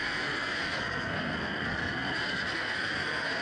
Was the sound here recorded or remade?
remade